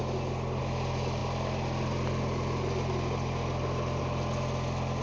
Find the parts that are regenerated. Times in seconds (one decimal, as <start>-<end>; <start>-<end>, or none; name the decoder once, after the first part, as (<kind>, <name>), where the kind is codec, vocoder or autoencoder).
none